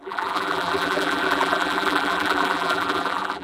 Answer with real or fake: fake